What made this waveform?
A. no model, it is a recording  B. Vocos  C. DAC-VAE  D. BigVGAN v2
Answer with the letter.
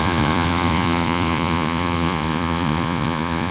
B